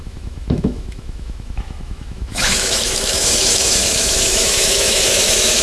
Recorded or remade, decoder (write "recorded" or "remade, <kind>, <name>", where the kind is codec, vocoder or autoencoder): remade, autoencoder, DAC-VAE